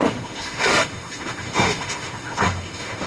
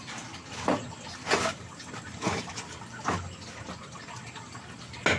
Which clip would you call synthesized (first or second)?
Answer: first